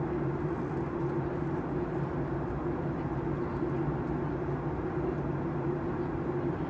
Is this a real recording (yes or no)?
yes